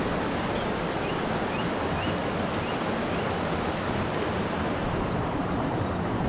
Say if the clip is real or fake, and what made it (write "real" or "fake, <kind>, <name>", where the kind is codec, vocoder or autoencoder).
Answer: real